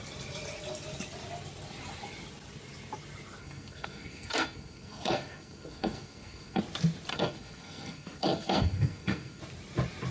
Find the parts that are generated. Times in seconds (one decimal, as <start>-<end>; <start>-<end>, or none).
3.4-6.6; 7.1-9.4